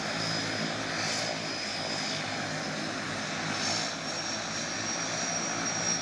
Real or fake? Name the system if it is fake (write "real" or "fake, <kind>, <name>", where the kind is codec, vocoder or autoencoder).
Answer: real